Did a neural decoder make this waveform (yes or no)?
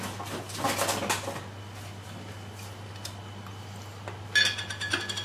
no